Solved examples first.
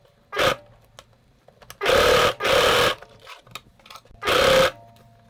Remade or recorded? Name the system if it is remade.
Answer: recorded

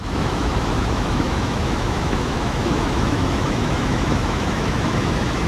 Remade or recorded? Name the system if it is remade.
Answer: remade, autoencoder, DAC-VAE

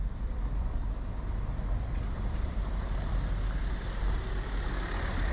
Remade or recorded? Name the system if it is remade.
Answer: remade, vocoder, BigVGAN v2